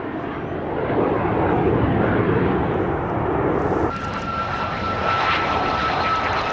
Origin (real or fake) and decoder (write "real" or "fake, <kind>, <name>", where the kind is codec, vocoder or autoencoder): real